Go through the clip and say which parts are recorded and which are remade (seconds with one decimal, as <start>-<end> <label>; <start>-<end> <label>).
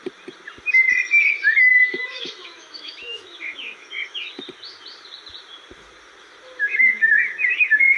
0.0-1.7 recorded; 1.7-4.4 remade; 4.4-6.6 recorded; 6.6-8.0 remade